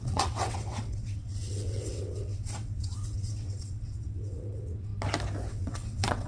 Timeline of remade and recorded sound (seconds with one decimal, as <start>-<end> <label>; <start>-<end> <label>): 0.0-4.9 remade; 4.9-5.5 recorded; 5.5-6.3 remade